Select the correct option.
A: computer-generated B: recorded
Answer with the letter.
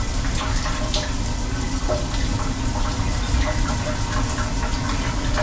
B